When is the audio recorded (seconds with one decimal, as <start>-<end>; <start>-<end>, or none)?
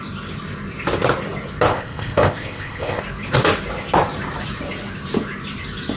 0.0-1.7; 3.0-6.0